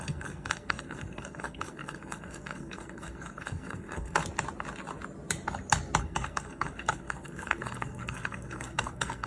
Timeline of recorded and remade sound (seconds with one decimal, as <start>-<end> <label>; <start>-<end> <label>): 0.0-4.2 remade; 4.2-6.0 recorded; 6.0-9.3 remade